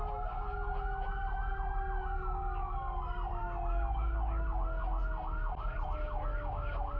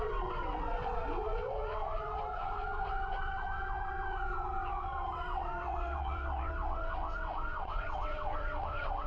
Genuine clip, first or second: first